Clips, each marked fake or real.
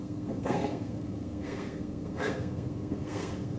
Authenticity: fake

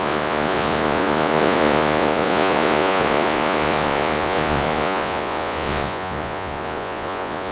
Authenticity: fake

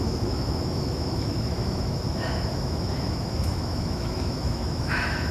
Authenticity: fake